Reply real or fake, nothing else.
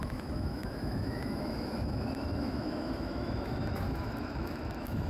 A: fake